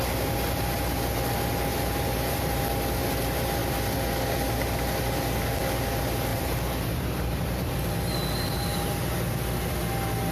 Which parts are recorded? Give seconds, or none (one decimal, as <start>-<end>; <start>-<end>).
0.0-1.7; 2.6-6.3; 7.7-10.3